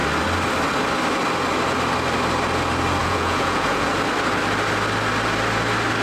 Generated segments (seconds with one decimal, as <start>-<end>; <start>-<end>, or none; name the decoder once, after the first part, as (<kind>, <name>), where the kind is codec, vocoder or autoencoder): 3.0-3.9 (vocoder, Vocos)